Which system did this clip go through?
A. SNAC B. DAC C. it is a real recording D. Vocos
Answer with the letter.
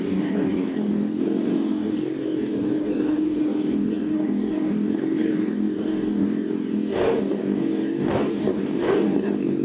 B